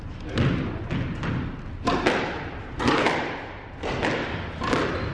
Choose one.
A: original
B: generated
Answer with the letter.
A